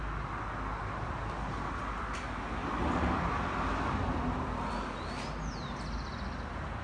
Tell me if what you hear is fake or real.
real